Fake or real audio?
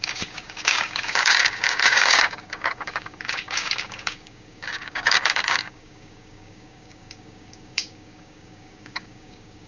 fake